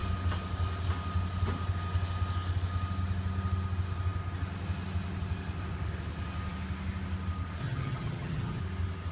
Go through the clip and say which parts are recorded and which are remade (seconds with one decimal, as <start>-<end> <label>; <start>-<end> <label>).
0.0-7.6 recorded; 7.6-8.6 remade; 8.6-9.1 recorded